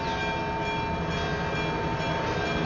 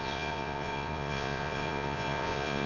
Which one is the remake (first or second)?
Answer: second